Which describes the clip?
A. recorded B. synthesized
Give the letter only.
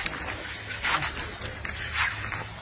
A